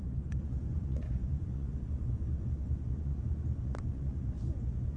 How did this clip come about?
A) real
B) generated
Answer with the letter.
B